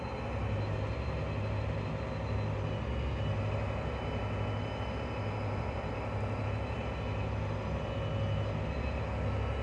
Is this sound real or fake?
real